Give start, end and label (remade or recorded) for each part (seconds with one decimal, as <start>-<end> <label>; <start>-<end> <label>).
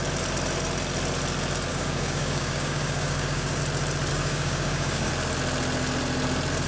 0.0-1.7 recorded; 1.7-3.6 remade; 3.6-4.1 recorded; 4.1-5.1 remade; 5.1-6.7 recorded